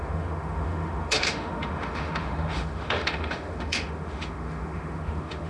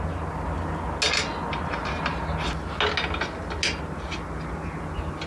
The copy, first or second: first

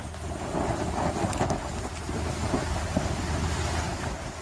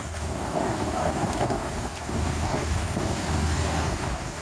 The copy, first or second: second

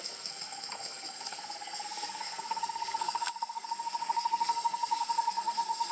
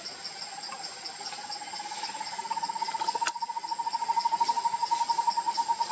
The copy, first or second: first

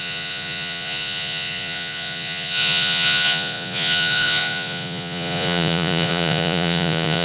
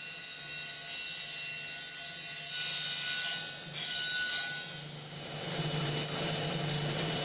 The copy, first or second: first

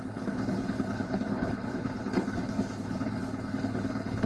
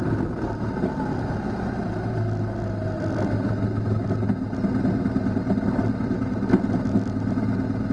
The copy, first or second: first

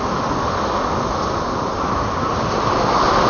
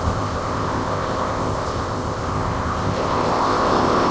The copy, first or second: second